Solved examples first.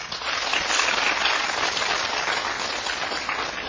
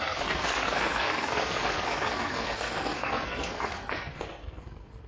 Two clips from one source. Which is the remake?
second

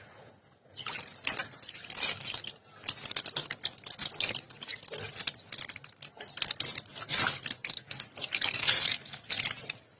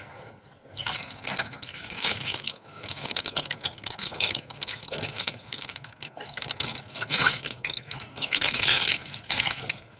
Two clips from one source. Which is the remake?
second